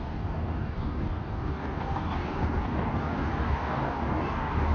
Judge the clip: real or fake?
fake